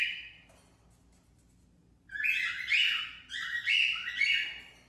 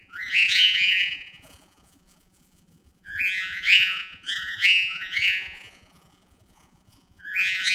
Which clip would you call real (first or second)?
first